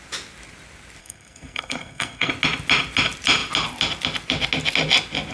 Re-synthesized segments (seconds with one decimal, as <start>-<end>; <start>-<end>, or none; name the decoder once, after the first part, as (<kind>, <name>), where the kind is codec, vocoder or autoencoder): 1.0-2.3 (codec, SNAC)